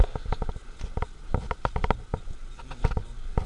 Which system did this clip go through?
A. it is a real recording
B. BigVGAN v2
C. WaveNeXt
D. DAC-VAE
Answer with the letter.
A